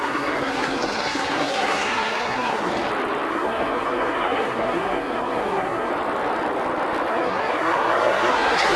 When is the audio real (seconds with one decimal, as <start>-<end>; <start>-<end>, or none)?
2.7-3.3; 5.9-7.1